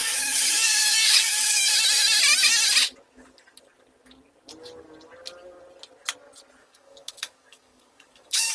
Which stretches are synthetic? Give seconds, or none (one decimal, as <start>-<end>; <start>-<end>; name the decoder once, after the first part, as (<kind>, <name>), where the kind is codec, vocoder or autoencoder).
0.0-1.7 (codec, DAC); 6.6-8.5